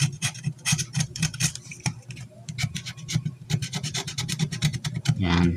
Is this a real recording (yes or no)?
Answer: no